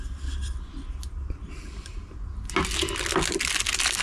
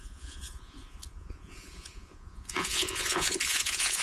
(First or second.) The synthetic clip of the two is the second